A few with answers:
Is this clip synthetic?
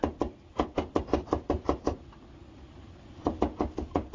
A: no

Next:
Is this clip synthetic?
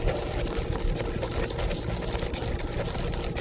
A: no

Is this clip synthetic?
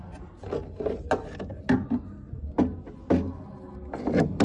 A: no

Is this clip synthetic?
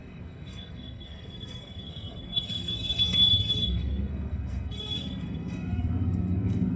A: yes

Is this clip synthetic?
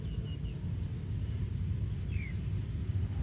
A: no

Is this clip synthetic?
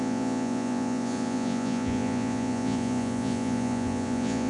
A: yes